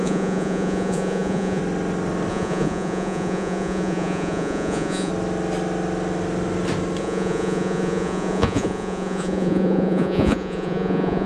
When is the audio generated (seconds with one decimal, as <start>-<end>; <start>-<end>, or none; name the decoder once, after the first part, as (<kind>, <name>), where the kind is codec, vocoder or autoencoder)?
0.0-1.6 (vocoder, Vocos); 2.3-5.1; 7.0-11.3